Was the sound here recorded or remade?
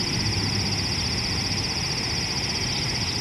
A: recorded